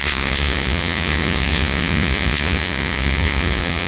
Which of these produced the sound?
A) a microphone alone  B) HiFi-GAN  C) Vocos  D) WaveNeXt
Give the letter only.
C